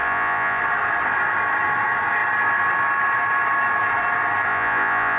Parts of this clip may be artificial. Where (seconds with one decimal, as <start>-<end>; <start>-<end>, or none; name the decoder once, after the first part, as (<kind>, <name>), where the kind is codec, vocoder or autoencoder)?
0.0-0.6 (vocoder, Vocos); 4.5-5.2